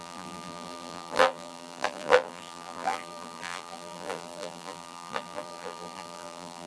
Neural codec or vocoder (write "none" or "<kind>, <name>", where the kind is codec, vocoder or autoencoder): vocoder, BigVGAN v2